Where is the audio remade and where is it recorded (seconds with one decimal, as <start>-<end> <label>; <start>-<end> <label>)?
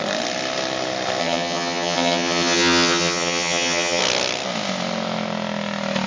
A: 0.0-1.2 recorded; 1.2-4.0 remade; 4.0-6.1 recorded